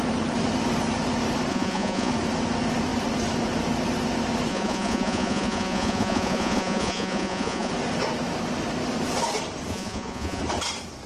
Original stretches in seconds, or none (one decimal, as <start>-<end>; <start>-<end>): 0.0-1.5; 2.1-4.5; 7.7-9.7; 10.4-11.1